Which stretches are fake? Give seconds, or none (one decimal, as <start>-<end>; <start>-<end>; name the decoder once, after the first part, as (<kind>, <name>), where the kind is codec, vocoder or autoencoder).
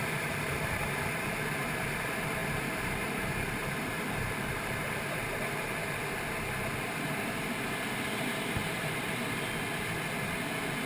0.0-5.8 (vocoder, BigVGAN v2); 6.8-9.2